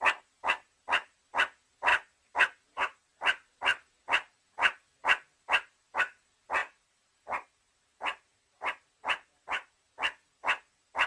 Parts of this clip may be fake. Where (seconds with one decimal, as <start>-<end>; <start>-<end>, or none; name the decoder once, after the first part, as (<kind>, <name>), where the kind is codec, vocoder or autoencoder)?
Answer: 6.6-9.7 (vocoder, BigVGAN v2)